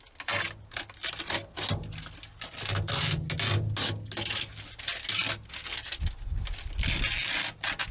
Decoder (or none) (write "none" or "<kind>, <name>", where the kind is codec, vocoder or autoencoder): none